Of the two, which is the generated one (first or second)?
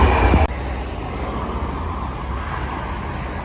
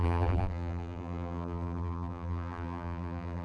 second